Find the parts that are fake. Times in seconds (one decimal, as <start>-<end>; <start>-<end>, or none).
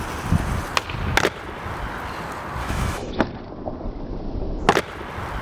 2.6-3.2